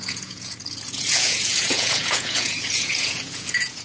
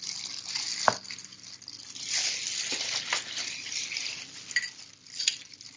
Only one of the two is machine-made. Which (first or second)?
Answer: first